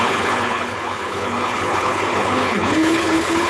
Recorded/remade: remade